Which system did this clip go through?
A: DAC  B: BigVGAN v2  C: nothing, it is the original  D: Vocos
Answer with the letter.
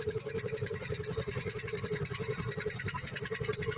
D